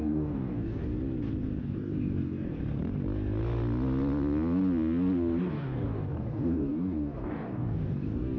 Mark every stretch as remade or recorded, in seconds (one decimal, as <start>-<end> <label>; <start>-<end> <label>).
0.0-0.8 remade; 0.8-1.6 recorded; 1.6-2.6 remade; 2.6-5.4 recorded; 5.4-8.4 remade